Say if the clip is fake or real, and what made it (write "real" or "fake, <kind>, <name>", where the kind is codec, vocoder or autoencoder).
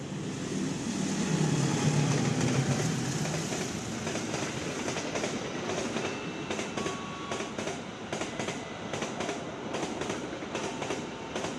real